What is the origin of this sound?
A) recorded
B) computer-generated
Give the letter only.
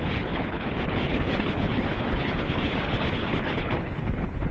B